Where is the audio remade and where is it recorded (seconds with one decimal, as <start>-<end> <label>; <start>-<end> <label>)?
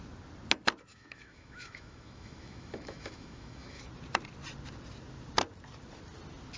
0.0-0.9 recorded; 0.9-3.8 remade; 3.8-6.6 recorded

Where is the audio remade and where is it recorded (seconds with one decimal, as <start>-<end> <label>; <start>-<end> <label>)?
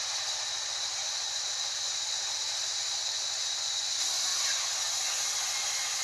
0.0-1.0 recorded; 1.0-1.9 remade; 1.9-6.0 recorded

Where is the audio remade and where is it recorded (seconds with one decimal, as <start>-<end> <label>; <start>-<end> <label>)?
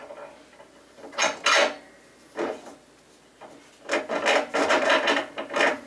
0.0-5.9 recorded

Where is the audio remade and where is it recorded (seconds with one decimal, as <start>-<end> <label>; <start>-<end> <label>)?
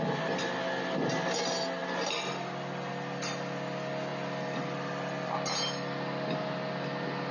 0.0-7.3 recorded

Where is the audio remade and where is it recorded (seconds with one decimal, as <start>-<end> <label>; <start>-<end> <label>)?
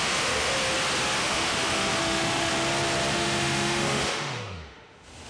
0.0-0.5 remade; 0.5-1.2 recorded; 1.2-2.5 remade; 2.5-3.1 recorded; 3.1-5.3 remade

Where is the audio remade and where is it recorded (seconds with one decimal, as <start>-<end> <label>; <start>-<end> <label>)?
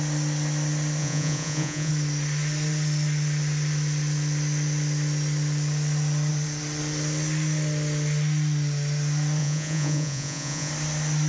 0.0-1.0 recorded; 1.0-1.9 remade; 1.9-9.4 recorded; 9.4-10.7 remade; 10.7-11.3 recorded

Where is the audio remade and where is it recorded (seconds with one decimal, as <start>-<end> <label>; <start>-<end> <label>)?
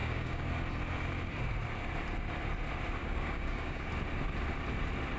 0.0-0.5 remade; 0.5-3.0 recorded; 3.0-3.9 remade; 3.9-5.2 recorded